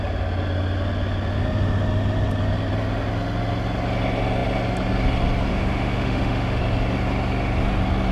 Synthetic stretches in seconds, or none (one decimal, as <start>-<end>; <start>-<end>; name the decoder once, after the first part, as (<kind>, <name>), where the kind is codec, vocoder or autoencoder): 5.5-6.6 (autoencoder, DAC-VAE)

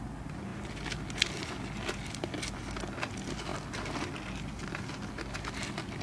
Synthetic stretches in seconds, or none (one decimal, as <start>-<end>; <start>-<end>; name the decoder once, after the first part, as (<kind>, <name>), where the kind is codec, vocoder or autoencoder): none

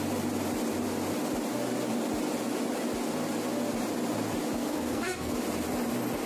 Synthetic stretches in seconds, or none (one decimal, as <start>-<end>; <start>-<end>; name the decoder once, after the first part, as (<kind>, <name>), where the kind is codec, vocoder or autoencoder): 4.6-5.3 (codec, SNAC)

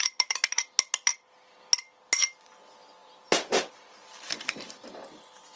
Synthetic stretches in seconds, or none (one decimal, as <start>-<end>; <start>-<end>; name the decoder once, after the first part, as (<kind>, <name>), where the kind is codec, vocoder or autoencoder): 3.0-3.7 (vocoder, BigVGAN v2)